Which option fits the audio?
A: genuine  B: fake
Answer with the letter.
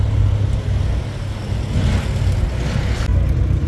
A